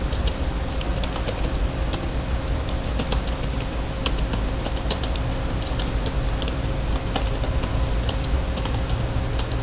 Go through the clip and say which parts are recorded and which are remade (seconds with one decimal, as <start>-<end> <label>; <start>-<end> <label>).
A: 0.0-9.6 recorded